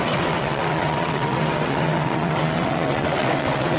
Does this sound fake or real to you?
fake